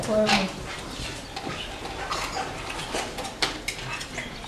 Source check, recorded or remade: recorded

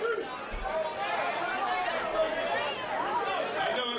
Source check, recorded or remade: recorded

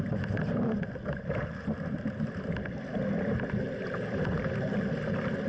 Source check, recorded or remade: recorded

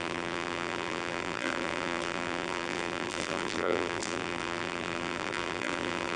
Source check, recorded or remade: remade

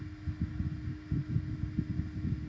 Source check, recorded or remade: recorded